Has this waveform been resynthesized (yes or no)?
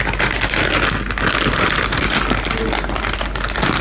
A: no